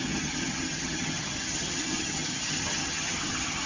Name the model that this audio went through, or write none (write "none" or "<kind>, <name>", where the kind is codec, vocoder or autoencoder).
vocoder, HiFi-GAN